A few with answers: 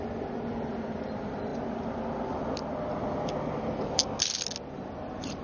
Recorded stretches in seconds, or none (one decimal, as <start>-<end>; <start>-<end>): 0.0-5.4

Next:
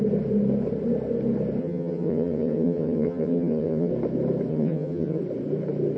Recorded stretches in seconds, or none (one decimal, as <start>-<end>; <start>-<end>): 0.0-1.6; 3.9-4.5; 5.2-6.0

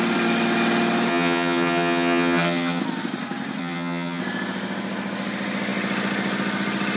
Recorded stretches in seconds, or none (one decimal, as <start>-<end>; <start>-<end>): 0.0-1.1; 2.8-3.6; 4.2-7.0